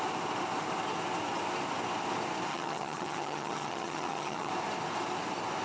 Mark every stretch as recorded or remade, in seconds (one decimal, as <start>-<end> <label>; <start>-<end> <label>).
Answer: 0.0-2.5 recorded; 2.5-4.5 remade; 4.5-5.6 recorded